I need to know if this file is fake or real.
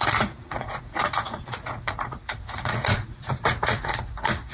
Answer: fake